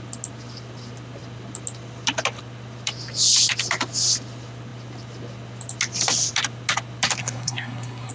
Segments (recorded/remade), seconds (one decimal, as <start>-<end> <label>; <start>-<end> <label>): 0.0-7.2 recorded; 7.2-8.1 remade